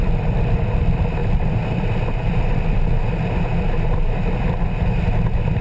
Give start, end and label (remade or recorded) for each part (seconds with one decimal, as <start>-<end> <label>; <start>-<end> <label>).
0.0-5.6 recorded